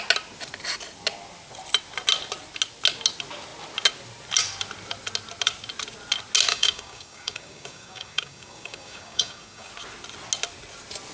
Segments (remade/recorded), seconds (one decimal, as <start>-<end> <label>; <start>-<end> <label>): 0.0-6.5 recorded; 6.5-9.7 remade; 9.7-11.1 recorded